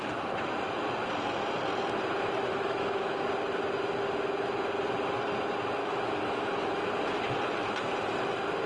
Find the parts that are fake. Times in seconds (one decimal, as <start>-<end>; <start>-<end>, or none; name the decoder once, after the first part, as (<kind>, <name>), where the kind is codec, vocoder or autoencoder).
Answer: 2.5-3.2 (autoencoder, DAC-VAE); 5.8-6.9